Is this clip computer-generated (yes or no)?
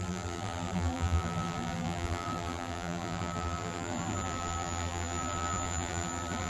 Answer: yes